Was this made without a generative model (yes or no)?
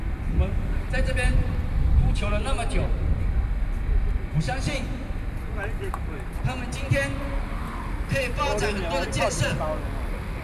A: yes